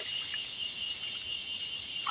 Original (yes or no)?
yes